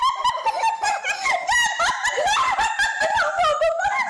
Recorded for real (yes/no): yes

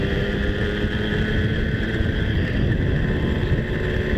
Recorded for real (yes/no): yes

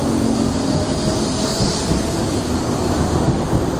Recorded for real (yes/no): yes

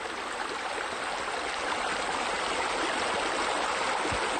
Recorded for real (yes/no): yes